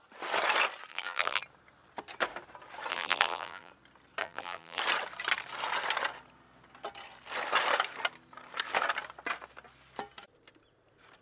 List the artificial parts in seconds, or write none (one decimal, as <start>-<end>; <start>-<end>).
0.9-1.4; 2.9-3.7; 4.2-4.8